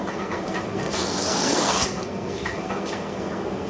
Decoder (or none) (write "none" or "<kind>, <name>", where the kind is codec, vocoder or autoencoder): codec, SNAC